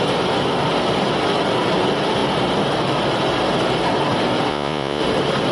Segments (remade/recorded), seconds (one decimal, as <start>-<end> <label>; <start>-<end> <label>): 0.0-4.5 recorded; 4.5-5.0 remade; 5.0-5.5 recorded